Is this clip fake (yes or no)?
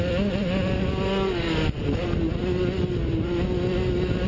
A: no